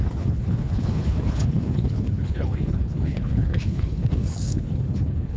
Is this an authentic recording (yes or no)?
no